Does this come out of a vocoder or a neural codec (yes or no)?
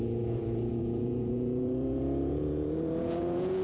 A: yes